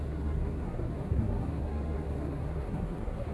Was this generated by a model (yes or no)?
yes